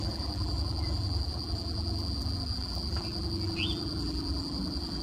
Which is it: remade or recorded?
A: remade